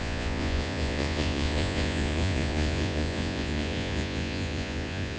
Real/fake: fake